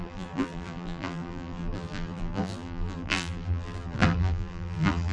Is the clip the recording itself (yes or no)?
no